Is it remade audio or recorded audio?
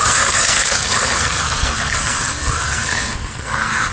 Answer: remade